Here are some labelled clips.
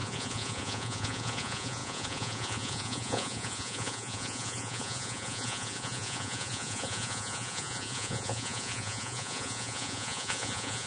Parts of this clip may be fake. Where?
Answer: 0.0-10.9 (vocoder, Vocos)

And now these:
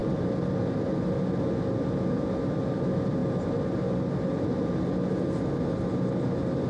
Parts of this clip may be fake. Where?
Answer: none

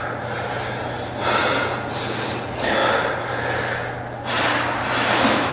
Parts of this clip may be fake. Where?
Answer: 1.4-1.9 (vocoder, Vocos)

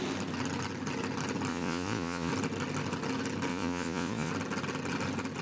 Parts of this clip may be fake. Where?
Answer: 1.5-2.3 (vocoder, Vocos); 3.5-4.3

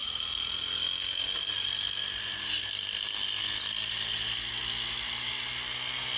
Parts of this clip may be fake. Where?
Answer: none